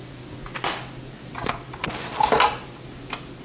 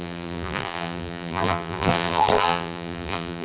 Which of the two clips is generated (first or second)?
second